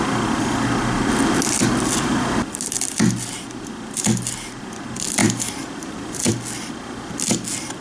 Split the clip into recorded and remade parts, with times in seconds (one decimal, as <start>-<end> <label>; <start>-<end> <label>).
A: 0.0-5.2 recorded; 5.2-6.3 remade; 6.3-7.8 recorded